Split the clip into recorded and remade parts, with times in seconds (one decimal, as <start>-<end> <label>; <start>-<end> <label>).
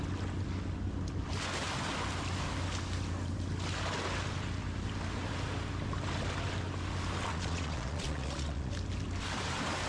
0.0-7.3 recorded; 7.3-8.7 remade; 8.7-9.9 recorded